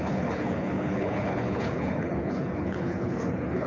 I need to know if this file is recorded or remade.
remade